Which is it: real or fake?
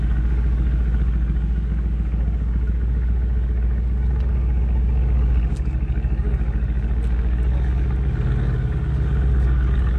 fake